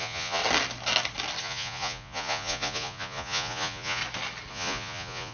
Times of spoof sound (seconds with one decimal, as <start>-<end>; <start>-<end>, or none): 0.0-0.4; 1.4-4.0; 4.5-5.3